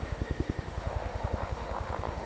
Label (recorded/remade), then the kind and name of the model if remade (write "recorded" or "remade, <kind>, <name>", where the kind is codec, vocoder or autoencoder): remade, autoencoder, DAC-VAE